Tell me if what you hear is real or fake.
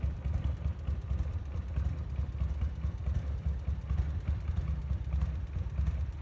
fake